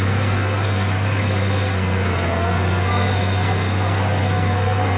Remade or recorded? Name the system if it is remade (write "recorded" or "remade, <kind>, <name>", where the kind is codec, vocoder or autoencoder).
remade, codec, SNAC